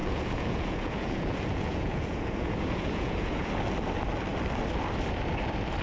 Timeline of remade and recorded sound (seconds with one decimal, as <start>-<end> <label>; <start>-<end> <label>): 0.0-3.5 remade; 3.5-5.8 recorded